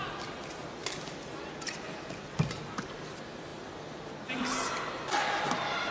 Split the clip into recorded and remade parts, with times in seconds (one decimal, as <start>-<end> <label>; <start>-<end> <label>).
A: 0.0-5.9 recorded